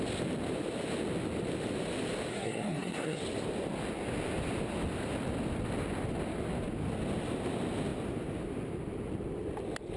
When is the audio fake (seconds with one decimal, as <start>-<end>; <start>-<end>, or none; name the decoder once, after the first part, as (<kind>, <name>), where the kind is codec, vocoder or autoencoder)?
2.3-3.2 (codec, SNAC)